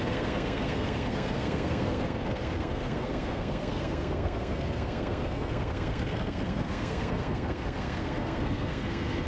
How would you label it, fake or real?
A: fake